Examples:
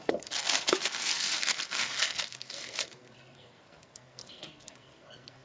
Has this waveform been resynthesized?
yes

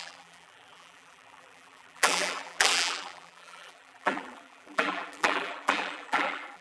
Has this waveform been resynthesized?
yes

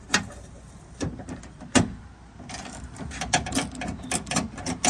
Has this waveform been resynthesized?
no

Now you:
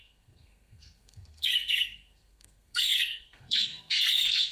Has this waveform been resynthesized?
yes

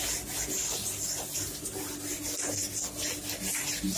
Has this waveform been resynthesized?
no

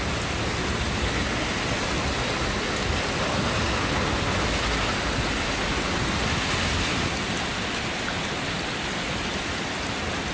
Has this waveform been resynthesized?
no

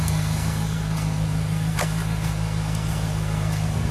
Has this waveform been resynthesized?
yes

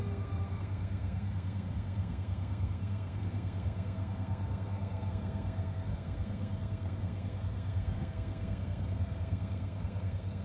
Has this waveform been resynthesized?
yes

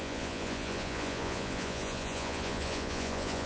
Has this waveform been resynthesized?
yes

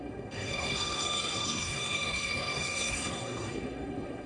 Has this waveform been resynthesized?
yes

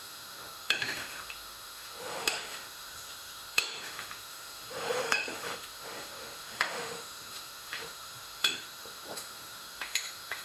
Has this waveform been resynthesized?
yes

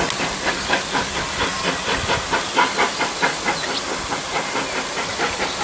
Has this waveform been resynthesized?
no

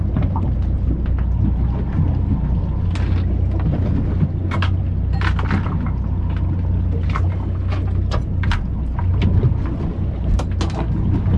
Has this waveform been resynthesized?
no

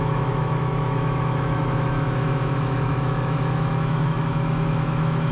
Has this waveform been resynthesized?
yes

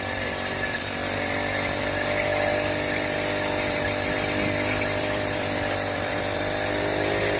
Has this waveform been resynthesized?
yes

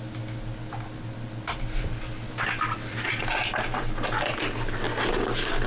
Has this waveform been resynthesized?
no